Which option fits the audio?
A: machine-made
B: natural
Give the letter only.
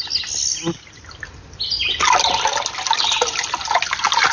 B